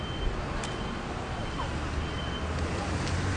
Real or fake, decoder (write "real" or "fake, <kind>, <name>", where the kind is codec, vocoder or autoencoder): real